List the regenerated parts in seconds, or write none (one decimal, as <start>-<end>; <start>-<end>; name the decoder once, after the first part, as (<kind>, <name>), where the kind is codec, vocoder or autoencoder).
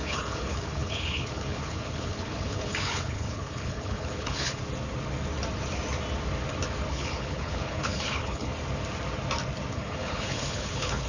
0.0-4.6 (codec, HILCodec); 6.9-8.5; 9.7-11.1